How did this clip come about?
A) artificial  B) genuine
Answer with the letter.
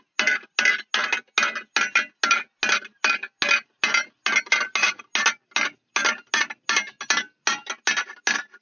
B